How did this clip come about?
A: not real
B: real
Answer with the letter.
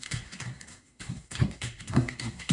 A